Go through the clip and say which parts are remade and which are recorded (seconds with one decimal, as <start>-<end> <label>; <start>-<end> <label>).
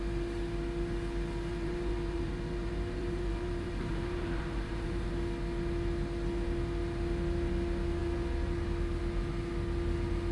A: 0.0-1.5 recorded; 1.5-5.1 remade; 5.1-10.3 recorded